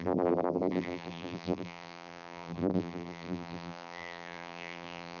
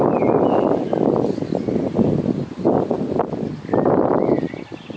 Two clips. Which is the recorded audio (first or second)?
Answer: second